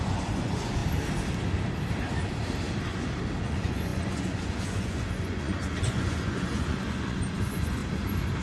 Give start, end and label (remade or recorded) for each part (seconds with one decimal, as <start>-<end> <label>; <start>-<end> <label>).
0.0-0.8 remade; 0.8-3.4 recorded; 3.4-7.8 remade; 7.8-8.4 recorded